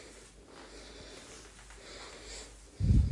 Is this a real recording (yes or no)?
yes